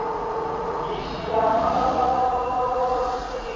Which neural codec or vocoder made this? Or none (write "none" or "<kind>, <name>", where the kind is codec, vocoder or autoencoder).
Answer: vocoder, Vocos